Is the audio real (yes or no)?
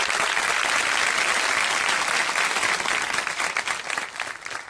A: yes